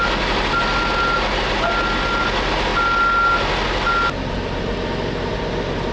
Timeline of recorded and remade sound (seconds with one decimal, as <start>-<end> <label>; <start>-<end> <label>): 0.0-5.9 recorded